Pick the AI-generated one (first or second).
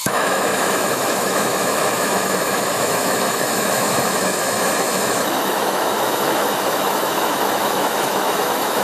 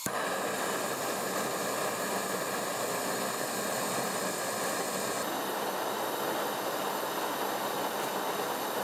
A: first